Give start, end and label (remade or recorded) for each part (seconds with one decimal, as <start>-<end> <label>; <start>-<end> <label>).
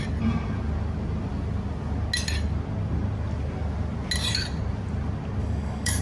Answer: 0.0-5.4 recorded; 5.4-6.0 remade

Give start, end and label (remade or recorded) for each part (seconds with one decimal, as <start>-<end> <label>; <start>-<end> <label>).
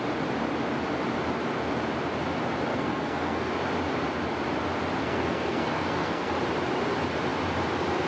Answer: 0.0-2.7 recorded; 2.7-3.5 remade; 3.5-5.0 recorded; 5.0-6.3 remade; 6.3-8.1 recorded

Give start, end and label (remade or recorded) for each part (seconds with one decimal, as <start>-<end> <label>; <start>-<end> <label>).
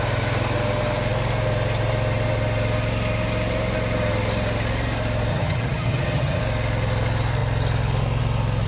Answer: 0.0-5.3 recorded; 5.3-6.4 remade; 6.4-8.7 recorded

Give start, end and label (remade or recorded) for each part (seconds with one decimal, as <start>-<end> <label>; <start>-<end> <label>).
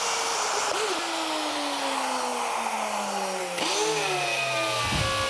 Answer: 0.0-0.7 remade; 0.7-5.3 recorded